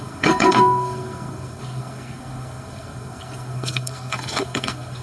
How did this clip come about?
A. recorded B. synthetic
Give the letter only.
B